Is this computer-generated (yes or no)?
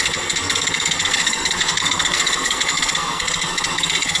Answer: yes